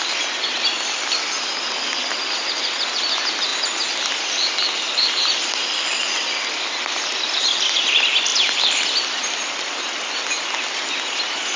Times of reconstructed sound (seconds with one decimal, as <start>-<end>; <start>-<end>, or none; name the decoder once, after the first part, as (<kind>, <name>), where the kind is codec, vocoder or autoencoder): 3.5-6.6 (vocoder, BigVGAN v2); 8.3-9.8